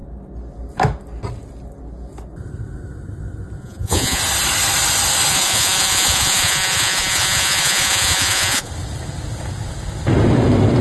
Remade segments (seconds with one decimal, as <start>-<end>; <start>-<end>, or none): 3.6-4.2; 5.3-8.7